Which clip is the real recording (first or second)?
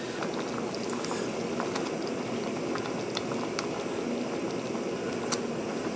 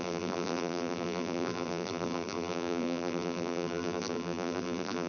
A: first